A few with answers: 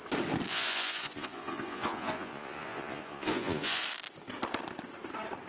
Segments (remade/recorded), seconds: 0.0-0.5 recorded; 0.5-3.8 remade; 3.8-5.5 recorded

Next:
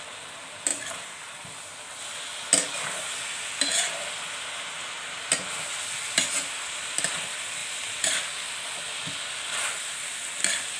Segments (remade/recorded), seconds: 0.0-10.8 recorded

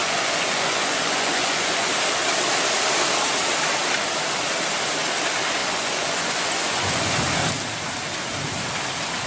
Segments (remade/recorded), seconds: 0.0-1.9 remade; 1.9-5.6 recorded; 5.6-7.2 remade; 7.2-9.3 recorded

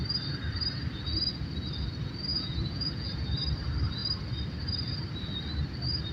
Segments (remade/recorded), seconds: 0.0-2.3 recorded; 2.3-3.2 remade; 3.2-6.1 recorded